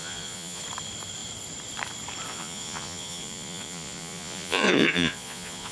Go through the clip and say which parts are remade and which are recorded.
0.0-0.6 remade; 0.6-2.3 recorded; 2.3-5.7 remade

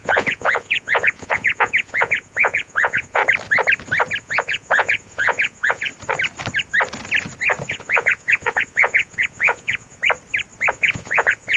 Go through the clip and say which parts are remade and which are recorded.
0.0-3.2 remade; 3.2-4.2 recorded; 4.2-5.9 remade; 5.9-7.7 recorded; 7.7-10.0 remade; 10.0-10.7 recorded; 10.7-11.6 remade